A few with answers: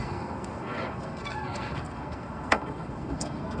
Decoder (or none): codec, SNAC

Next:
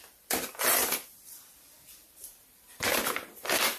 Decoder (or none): vocoder, BigVGAN v2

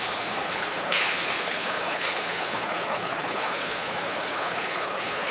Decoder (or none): codec, HILCodec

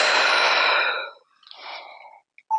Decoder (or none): none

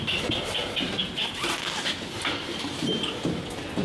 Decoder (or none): none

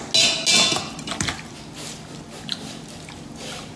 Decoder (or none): none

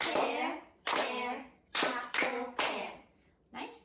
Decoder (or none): vocoder, BigVGAN v2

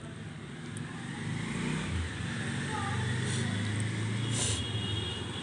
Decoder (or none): none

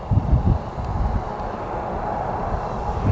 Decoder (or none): none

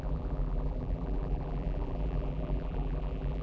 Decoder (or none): vocoder, BigVGAN v2